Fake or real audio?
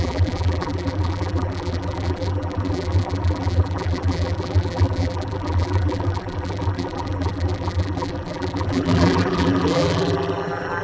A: fake